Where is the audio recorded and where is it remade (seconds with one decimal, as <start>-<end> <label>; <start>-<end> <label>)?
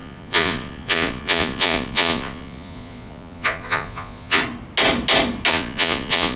0.0-4.4 remade; 4.4-5.5 recorded; 5.5-6.4 remade